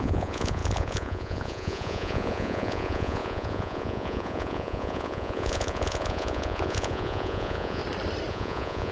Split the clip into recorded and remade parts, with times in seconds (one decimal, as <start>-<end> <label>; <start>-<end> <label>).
0.0-7.8 remade; 7.8-8.3 recorded; 8.3-8.9 remade